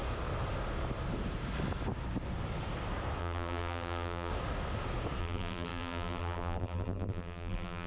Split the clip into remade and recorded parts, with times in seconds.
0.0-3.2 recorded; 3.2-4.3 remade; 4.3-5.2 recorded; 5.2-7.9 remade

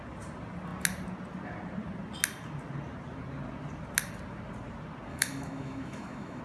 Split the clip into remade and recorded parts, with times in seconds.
0.0-5.1 recorded; 5.1-6.4 remade

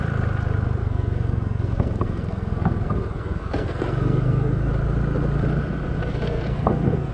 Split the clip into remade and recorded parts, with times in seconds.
0.0-0.8 recorded; 0.8-4.7 remade; 4.7-6.0 recorded; 6.0-7.1 remade

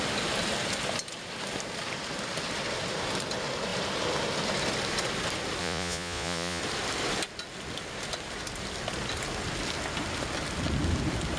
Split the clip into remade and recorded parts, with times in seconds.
0.0-5.6 recorded; 5.6-6.6 remade; 6.6-11.4 recorded

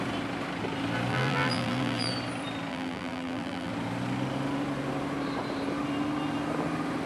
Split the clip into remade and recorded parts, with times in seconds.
0.0-1.1 recorded; 1.1-2.1 remade; 2.1-2.7 recorded; 2.7-3.7 remade; 3.7-7.1 recorded

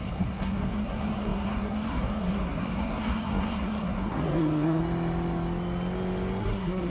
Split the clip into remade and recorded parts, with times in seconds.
0.0-4.8 remade; 4.8-6.4 recorded; 6.4-6.9 remade

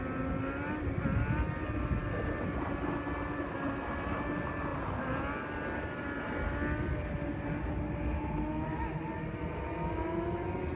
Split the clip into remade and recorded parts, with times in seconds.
0.0-4.7 recorded; 4.7-5.3 remade; 5.3-10.8 recorded